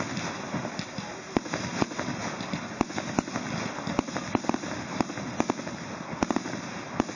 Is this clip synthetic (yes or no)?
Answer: no